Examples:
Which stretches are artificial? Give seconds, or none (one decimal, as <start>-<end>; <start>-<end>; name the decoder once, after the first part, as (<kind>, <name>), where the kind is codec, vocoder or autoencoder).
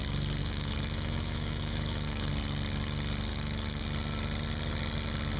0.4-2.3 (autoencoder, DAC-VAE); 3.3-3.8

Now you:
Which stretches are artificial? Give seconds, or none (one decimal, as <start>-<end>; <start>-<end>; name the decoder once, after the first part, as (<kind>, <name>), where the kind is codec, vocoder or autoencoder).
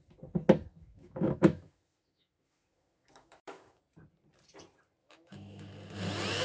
0.7-3.8 (autoencoder, DAC-VAE); 5.0-5.7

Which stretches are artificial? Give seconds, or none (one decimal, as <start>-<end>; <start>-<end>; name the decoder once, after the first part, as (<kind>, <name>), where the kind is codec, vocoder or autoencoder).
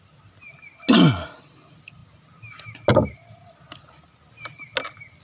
none